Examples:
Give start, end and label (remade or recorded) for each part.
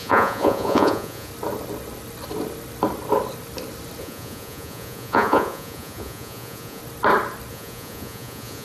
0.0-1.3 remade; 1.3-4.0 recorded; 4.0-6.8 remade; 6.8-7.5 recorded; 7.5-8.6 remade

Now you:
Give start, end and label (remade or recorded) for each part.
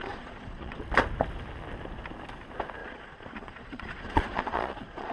0.0-0.8 remade; 0.8-2.8 recorded; 2.8-5.1 remade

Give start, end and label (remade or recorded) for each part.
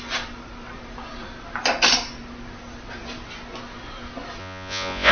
0.0-4.4 recorded; 4.4-5.1 remade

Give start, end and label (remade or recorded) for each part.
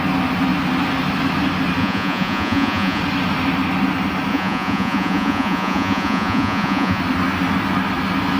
0.0-1.8 recorded; 1.8-3.0 remade; 3.0-4.3 recorded; 4.3-7.0 remade; 7.0-8.4 recorded